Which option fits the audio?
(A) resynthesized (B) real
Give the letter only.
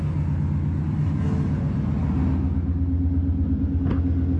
B